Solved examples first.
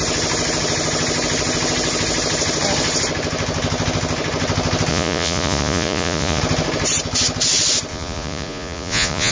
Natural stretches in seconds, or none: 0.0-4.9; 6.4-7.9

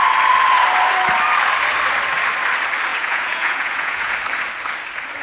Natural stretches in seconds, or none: 0.0-2.9; 4.1-5.2

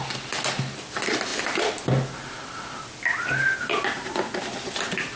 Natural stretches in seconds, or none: 0.0-5.2